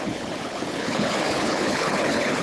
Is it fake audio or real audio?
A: fake